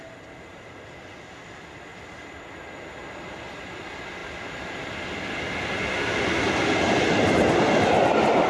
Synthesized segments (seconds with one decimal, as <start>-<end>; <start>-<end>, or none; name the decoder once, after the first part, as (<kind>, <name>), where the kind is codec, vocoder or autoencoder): none